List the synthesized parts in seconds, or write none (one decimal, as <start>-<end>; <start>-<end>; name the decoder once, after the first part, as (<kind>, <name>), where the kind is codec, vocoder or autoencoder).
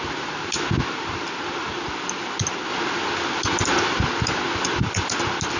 none